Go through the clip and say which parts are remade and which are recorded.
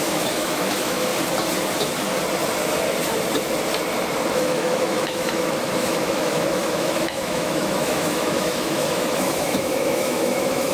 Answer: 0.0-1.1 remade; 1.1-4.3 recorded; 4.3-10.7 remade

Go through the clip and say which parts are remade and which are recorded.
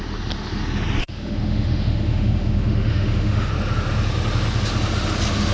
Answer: 0.0-1.0 recorded; 1.0-3.5 remade; 3.5-5.5 recorded